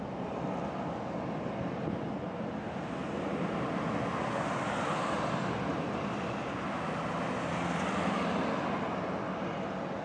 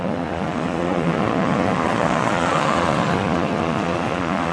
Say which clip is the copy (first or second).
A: second